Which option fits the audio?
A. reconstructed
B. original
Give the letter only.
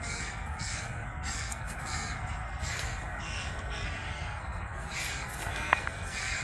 A